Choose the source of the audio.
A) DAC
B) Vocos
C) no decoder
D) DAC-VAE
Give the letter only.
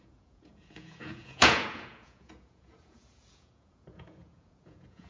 B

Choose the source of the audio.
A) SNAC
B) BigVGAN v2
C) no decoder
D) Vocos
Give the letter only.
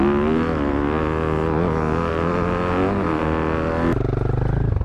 C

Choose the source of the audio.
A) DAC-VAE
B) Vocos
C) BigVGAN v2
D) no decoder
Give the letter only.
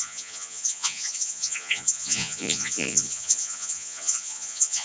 B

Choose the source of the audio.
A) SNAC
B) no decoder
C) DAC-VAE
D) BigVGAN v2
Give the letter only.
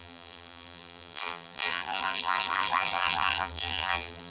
D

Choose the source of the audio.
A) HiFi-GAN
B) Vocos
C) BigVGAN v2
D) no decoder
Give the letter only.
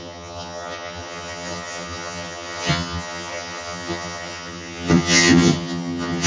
A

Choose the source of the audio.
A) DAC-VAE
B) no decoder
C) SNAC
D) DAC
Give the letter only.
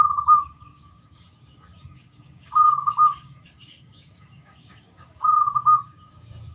D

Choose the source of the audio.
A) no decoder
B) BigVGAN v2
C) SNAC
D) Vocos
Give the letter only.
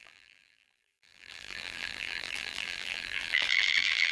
B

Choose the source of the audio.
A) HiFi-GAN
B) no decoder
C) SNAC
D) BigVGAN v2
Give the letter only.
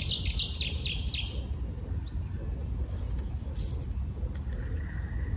B